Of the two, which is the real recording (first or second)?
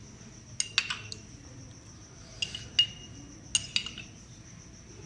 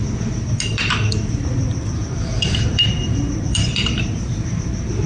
first